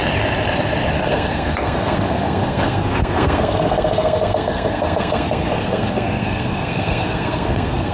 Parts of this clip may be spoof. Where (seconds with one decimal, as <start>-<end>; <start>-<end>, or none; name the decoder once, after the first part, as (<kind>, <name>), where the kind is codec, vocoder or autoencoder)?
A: 1.1-7.9 (codec, SNAC)